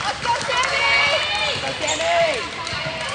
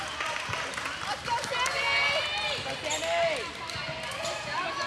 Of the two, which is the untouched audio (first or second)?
second